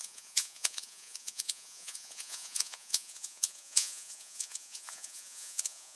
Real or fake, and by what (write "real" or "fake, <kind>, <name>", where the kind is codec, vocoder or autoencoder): fake, vocoder, Vocos